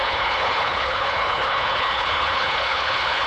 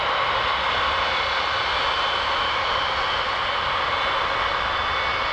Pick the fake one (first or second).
first